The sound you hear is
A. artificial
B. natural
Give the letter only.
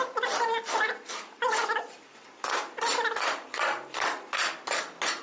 B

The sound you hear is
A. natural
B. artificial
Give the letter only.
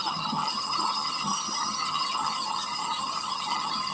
B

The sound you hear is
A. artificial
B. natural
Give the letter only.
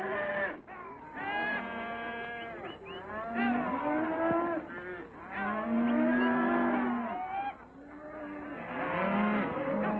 B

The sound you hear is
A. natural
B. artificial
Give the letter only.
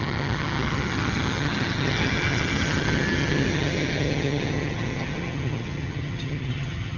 B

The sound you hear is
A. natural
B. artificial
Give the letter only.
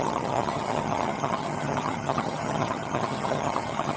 B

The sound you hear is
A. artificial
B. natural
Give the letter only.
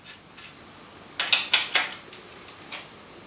B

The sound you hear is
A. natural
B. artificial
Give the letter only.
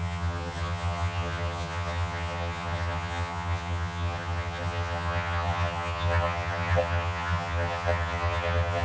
B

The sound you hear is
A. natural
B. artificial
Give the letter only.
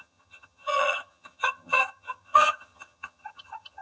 B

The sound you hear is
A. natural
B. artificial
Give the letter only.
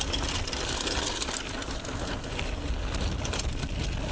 A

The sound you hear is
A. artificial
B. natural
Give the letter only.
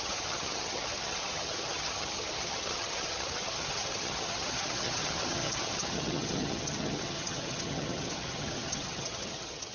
A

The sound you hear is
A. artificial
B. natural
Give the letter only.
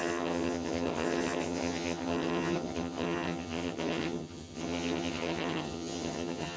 A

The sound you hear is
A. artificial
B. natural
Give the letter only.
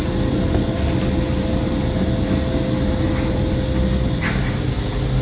B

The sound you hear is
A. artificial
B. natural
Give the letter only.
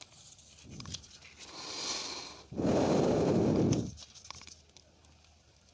B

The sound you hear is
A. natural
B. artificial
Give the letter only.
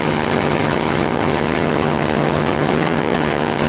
B